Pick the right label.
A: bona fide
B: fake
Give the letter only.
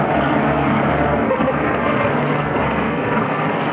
B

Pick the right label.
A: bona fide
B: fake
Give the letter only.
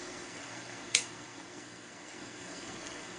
B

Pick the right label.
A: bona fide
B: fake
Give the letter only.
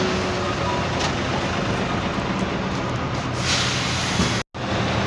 A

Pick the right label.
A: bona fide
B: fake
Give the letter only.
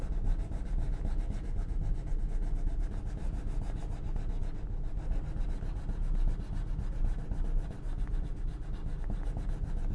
A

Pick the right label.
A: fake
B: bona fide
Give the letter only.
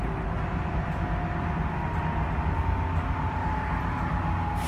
B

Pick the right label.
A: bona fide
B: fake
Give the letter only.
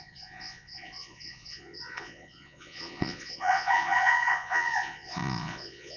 B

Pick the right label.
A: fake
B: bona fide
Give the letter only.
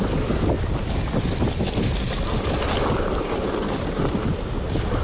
B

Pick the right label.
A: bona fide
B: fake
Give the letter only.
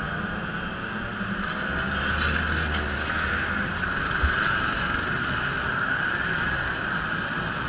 A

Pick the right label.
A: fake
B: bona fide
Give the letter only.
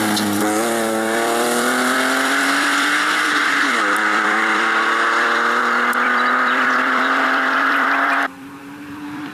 A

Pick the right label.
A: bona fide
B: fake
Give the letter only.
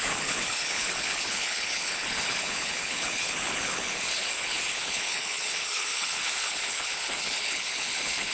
B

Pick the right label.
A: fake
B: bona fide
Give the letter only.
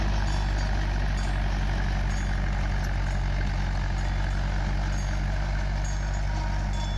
B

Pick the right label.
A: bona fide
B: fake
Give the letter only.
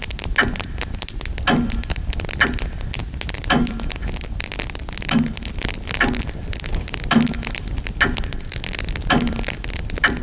A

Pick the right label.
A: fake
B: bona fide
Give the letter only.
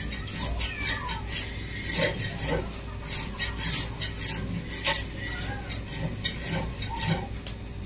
B